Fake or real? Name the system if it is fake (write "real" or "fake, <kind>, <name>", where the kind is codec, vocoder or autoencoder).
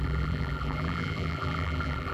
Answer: fake, vocoder, BigVGAN v2